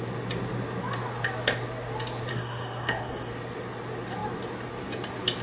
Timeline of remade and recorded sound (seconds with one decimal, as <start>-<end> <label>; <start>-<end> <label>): 0.0-2.3 recorded; 2.3-3.3 remade; 3.3-5.4 recorded